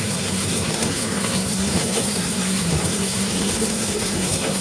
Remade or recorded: remade